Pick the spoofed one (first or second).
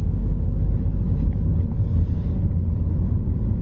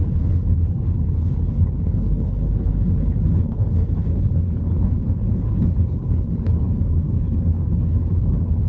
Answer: second